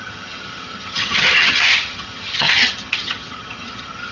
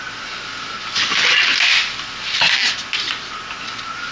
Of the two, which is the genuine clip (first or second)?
second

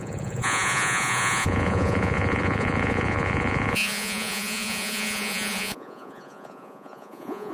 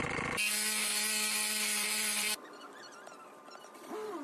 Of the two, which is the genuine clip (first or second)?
second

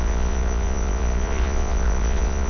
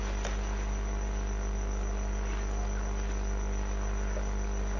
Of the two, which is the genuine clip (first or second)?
second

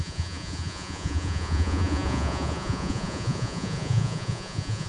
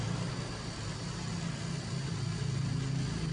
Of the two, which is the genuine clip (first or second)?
second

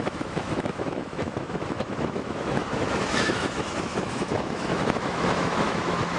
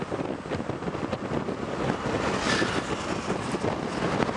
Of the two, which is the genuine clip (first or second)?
second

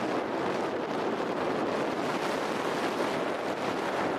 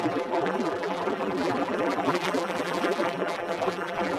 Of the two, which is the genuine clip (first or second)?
first